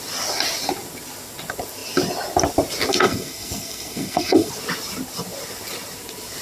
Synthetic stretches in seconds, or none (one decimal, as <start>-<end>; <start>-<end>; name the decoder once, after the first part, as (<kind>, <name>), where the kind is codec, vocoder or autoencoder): 2.9-4.5 (codec, SNAC)